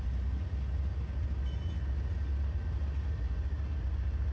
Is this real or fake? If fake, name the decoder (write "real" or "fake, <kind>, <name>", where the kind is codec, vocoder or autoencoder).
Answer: real